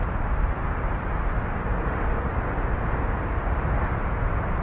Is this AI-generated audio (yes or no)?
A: yes